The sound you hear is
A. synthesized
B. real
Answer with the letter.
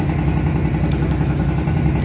B